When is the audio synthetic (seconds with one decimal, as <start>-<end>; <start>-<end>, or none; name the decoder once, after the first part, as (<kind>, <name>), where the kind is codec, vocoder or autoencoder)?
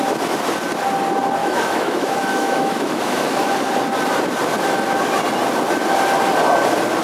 1.4-3.5 (autoencoder, DAC-VAE)